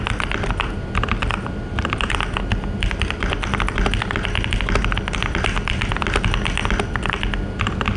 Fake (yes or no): no